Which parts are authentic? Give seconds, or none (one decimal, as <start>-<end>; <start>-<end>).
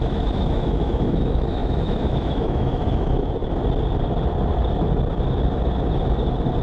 3.4-6.6